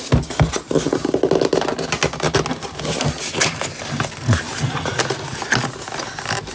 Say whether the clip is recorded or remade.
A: recorded